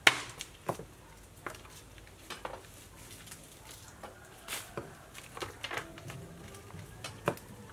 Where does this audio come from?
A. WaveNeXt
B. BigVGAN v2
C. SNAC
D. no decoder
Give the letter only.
D